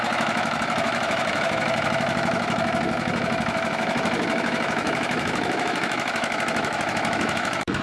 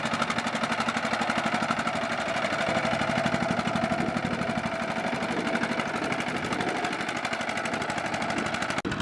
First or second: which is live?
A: second